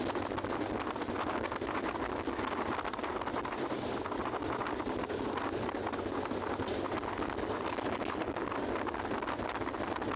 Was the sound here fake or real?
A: real